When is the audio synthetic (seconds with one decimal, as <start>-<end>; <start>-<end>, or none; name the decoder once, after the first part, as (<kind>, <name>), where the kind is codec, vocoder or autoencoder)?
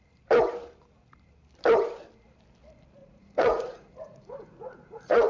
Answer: 3.0-5.3 (vocoder, Vocos)